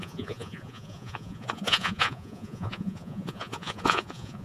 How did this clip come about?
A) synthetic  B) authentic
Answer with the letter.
A